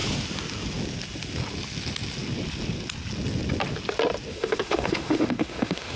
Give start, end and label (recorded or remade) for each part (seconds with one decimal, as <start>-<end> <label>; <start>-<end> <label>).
0.0-4.3 recorded; 4.3-6.0 remade

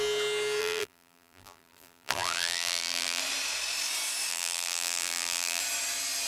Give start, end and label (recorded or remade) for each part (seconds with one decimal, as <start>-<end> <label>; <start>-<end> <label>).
0.0-0.6 recorded; 0.6-3.2 remade; 3.2-4.3 recorded; 4.3-5.6 remade; 5.6-6.3 recorded

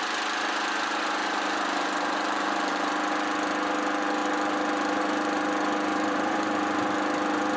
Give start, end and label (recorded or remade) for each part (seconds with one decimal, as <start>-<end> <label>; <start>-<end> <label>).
0.0-1.2 recorded; 1.2-2.9 remade; 2.9-5.9 recorded; 5.9-6.5 remade; 6.5-7.6 recorded

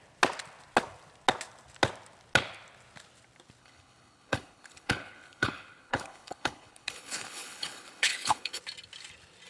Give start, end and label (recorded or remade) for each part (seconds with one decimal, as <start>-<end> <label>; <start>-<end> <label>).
0.0-3.6 recorded; 3.6-8.6 remade; 8.6-9.5 recorded

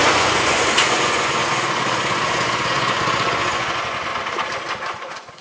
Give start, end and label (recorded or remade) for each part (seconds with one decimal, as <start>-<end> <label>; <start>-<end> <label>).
0.0-4.1 remade; 4.1-4.8 recorded; 4.8-5.4 remade

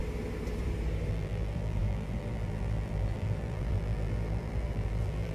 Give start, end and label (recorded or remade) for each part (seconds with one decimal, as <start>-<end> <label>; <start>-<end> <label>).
0.0-1.1 recorded; 1.1-5.3 remade

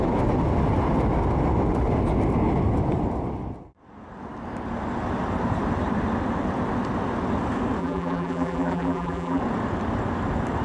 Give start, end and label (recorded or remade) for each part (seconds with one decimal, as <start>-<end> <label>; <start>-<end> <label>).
0.0-7.8 recorded; 7.8-9.4 remade; 9.4-10.6 recorded

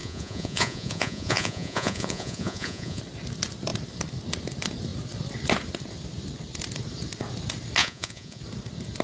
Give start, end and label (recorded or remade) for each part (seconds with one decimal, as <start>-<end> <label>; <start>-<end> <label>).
0.0-3.0 remade; 3.0-7.8 recorded; 7.8-8.4 remade; 8.4-9.0 recorded